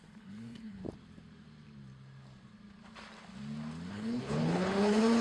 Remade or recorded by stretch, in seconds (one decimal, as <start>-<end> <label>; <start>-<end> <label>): 0.0-0.8 remade; 0.8-3.9 recorded; 3.9-5.2 remade